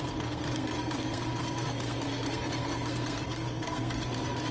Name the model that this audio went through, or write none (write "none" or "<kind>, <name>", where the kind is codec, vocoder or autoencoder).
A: codec, SNAC